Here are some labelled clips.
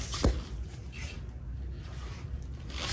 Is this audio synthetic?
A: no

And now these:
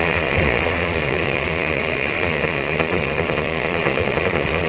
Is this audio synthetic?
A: yes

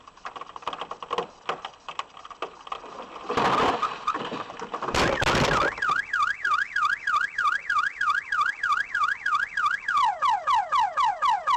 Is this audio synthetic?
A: no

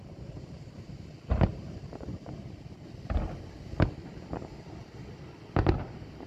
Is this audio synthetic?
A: no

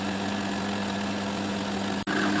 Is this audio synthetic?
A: no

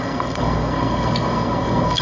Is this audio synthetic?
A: yes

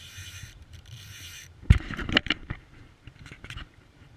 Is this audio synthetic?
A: yes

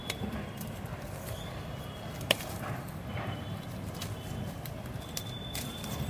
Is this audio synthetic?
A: yes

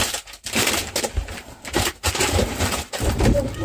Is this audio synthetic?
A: yes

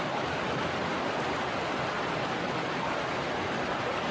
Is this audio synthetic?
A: no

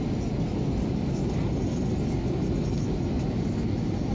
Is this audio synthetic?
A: no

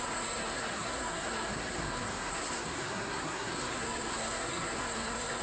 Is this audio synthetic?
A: yes